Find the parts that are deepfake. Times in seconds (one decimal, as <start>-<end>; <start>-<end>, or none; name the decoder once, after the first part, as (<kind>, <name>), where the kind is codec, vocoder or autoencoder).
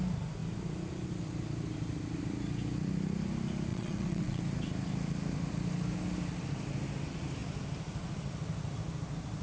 3.7-4.4 (vocoder, WaveNeXt)